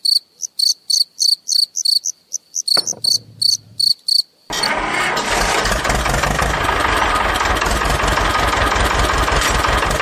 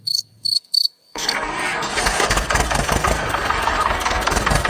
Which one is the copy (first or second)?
second